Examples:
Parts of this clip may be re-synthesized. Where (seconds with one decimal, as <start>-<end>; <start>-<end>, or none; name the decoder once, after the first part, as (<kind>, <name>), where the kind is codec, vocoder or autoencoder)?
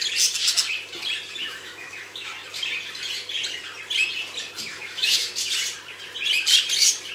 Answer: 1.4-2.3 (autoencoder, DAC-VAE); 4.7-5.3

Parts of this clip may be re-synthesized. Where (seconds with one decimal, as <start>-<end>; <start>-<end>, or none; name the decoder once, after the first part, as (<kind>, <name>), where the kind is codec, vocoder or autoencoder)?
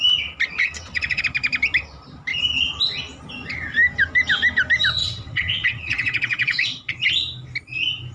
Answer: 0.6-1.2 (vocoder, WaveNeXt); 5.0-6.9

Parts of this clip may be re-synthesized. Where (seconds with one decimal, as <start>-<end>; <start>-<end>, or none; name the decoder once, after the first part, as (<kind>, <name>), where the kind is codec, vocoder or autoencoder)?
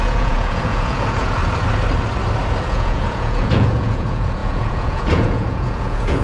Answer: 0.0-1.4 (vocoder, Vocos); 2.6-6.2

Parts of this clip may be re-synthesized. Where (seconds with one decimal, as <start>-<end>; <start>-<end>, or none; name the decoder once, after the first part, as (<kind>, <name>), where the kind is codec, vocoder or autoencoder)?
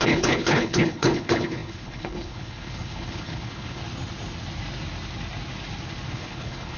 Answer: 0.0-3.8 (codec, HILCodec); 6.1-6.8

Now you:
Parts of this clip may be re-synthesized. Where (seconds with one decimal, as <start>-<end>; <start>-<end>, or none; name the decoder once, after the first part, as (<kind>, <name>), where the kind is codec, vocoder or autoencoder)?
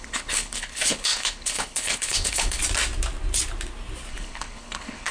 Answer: 0.0-2.6 (codec, HILCodec); 4.1-5.1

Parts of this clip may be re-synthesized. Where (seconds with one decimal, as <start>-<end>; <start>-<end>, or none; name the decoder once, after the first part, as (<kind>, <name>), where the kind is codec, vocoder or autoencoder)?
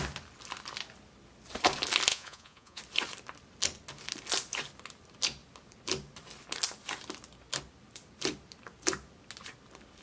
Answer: 2.1-2.8 (vocoder, Vocos)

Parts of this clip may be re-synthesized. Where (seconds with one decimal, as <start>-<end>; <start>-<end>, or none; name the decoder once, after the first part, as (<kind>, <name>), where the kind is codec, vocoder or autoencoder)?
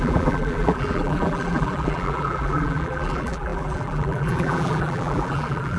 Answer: 0.0-5.8 (vocoder, BigVGAN v2)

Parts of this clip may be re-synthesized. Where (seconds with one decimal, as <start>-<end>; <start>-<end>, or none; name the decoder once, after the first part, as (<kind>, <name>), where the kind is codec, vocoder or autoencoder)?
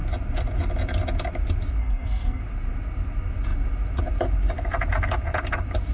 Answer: 1.8-2.4 (codec, SNAC)